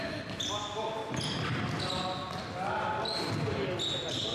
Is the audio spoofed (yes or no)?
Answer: no